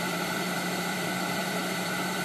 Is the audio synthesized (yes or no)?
yes